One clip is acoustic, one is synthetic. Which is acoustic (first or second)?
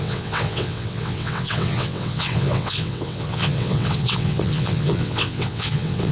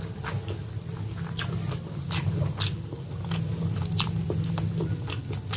second